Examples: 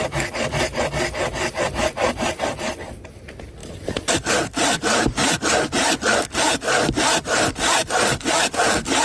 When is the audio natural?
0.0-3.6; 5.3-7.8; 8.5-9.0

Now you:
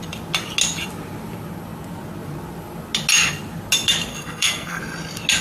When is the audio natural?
0.0-4.1; 4.8-5.4